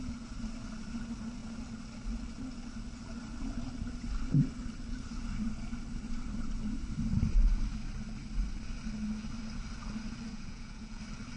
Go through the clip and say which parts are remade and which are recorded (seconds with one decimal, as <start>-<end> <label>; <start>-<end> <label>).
0.0-10.3 recorded; 10.3-11.0 remade; 11.0-11.4 recorded